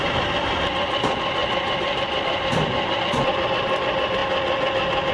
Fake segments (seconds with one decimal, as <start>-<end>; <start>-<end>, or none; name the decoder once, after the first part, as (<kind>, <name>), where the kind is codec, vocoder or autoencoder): none